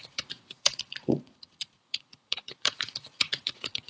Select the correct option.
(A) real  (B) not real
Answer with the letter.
B